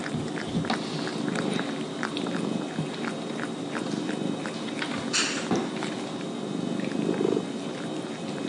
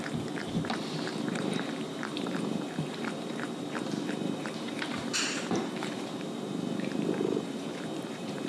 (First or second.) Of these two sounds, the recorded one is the first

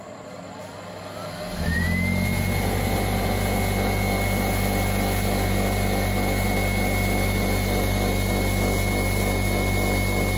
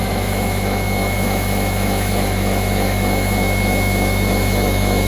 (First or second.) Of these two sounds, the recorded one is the first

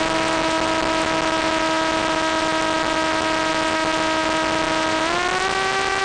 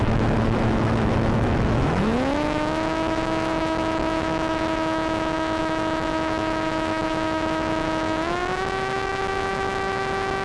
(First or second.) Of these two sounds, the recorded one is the first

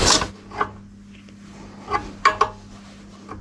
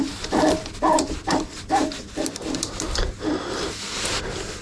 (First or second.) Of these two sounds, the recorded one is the first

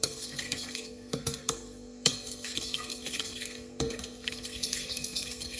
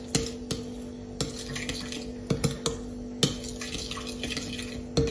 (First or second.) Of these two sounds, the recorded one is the second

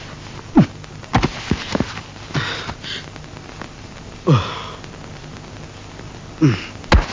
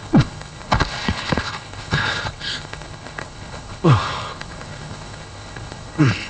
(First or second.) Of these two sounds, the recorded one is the first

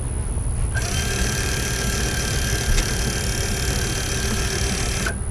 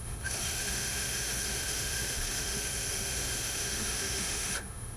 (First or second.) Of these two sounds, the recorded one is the first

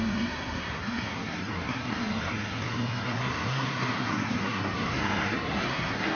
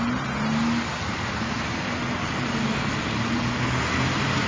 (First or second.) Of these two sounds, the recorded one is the second